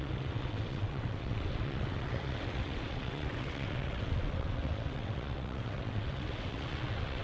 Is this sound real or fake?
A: fake